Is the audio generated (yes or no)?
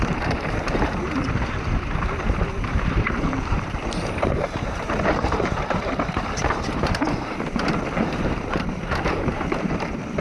yes